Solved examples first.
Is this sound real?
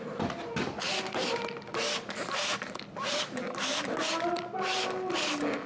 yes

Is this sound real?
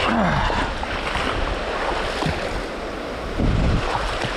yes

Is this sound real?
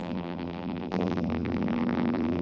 no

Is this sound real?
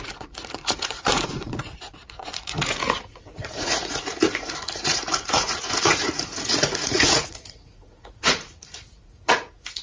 no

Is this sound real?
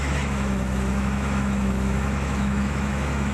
no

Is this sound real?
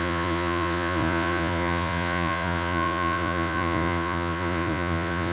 no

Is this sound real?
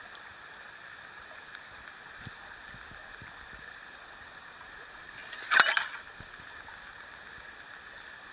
yes